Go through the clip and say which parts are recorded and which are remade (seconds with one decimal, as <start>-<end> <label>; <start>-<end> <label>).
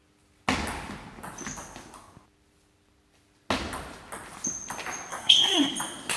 0.0-5.1 recorded; 5.1-5.7 remade; 5.7-6.2 recorded